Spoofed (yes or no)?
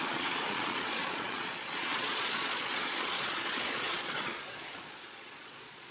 yes